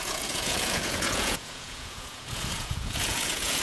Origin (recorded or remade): remade